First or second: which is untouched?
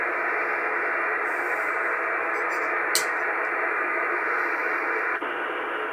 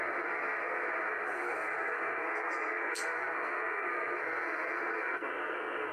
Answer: first